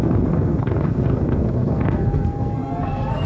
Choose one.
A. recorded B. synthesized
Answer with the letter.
B